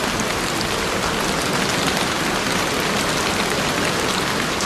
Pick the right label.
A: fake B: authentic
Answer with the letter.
B